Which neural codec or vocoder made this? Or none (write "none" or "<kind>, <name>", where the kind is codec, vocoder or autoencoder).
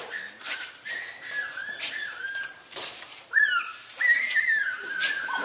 vocoder, BigVGAN v2